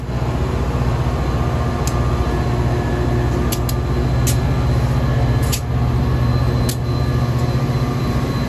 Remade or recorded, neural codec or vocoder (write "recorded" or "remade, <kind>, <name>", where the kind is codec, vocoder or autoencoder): recorded